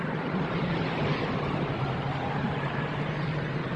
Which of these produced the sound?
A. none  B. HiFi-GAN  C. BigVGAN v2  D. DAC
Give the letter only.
C